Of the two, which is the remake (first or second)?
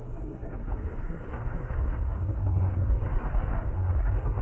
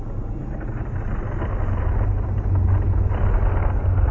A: first